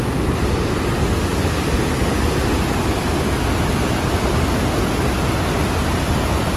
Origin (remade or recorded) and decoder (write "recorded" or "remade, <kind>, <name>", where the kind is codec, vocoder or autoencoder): recorded